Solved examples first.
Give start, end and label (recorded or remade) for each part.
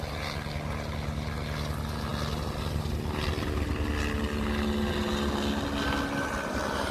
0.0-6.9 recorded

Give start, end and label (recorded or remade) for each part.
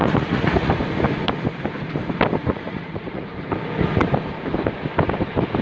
0.0-0.7 remade; 0.7-2.4 recorded; 2.4-3.3 remade; 3.3-5.6 recorded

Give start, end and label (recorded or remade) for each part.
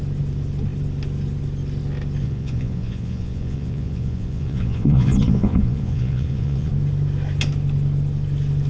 0.0-2.2 recorded; 2.2-6.7 remade; 6.7-8.7 recorded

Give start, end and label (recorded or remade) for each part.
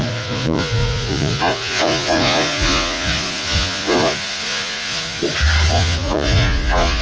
0.0-5.2 remade; 5.2-5.7 recorded; 5.7-7.0 remade